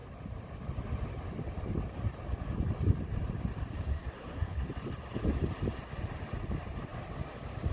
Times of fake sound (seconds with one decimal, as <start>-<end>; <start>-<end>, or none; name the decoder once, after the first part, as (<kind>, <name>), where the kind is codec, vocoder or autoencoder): 3.9-4.7 (codec, SNAC)